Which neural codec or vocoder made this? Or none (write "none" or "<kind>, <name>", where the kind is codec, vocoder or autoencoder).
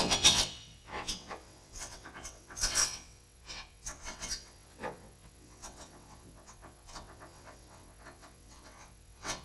vocoder, WaveNeXt